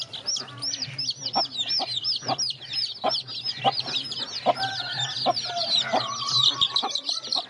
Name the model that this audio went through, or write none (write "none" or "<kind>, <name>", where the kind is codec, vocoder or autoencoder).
none